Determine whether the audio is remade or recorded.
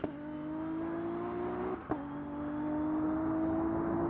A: recorded